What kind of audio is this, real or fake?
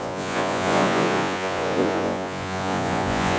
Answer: fake